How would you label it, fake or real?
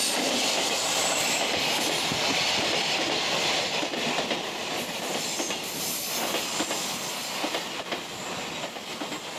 real